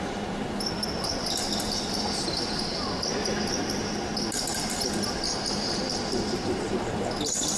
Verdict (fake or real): real